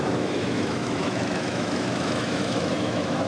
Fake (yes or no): yes